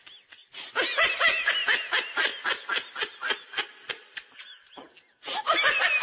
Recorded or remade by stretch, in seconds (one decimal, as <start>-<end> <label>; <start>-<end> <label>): 0.0-6.0 recorded